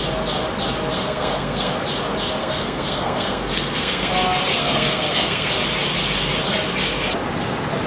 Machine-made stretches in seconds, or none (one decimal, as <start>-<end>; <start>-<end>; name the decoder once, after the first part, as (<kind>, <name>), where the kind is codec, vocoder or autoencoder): 0.9-1.7 (codec, SNAC); 2.4-4.1; 4.5-5.5